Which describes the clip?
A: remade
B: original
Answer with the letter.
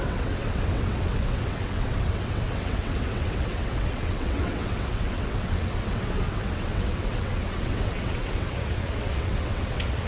A